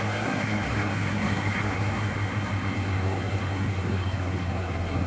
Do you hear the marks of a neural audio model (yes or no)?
yes